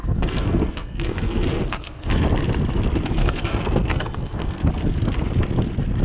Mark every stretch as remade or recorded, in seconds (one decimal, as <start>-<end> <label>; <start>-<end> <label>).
0.0-2.1 remade; 2.1-3.2 recorded; 3.2-4.7 remade; 4.7-6.0 recorded